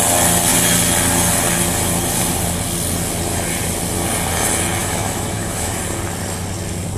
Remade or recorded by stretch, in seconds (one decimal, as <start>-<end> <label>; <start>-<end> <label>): 0.0-4.8 recorded; 4.8-5.8 remade; 5.8-7.0 recorded